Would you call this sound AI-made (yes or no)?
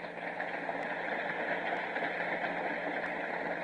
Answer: no